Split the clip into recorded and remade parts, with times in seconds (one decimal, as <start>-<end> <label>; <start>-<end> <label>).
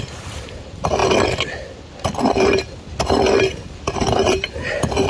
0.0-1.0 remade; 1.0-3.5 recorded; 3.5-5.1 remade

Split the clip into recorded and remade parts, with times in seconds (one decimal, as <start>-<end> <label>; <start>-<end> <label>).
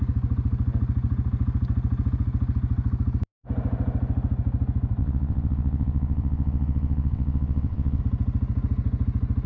0.0-5.0 recorded; 5.0-8.0 remade; 8.0-9.5 recorded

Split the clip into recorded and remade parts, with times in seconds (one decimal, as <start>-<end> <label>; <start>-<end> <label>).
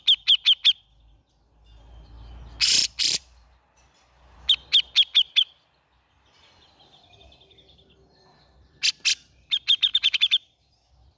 0.0-2.8 recorded; 2.8-3.8 remade; 3.8-9.9 recorded; 9.9-10.7 remade; 10.7-11.2 recorded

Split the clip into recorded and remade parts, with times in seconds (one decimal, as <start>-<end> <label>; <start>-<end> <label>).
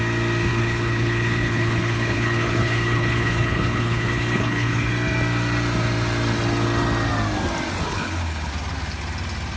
0.0-0.5 recorded; 0.5-4.9 remade; 4.9-7.8 recorded; 7.8-8.5 remade; 8.5-9.6 recorded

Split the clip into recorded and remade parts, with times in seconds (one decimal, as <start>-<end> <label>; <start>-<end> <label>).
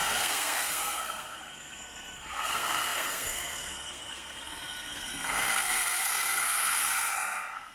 0.0-7.7 remade